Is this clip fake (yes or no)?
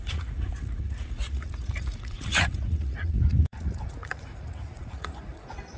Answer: yes